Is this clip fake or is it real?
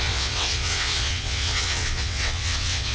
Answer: fake